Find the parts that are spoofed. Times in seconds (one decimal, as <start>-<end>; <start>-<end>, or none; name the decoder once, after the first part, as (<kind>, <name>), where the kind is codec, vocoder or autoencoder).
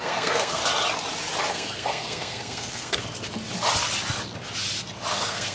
0.0-0.6 (codec, SNAC); 1.5-3.0; 5.1-5.5